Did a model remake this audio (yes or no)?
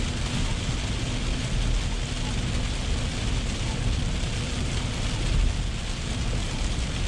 no